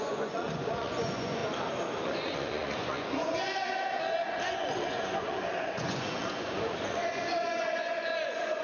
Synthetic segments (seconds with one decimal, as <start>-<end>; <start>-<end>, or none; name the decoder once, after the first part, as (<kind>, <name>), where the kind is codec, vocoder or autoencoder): 0.0-1.4 (vocoder, Vocos); 2.0-8.6